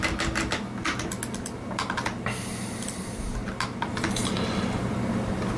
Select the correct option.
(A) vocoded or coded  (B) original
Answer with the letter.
B